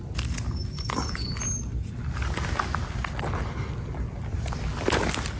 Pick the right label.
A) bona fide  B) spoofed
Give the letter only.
A